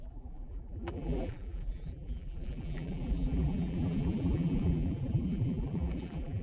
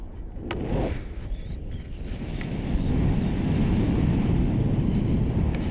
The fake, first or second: first